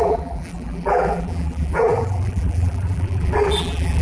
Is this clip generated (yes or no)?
yes